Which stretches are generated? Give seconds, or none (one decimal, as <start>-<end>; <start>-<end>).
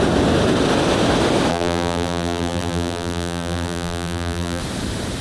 1.5-4.6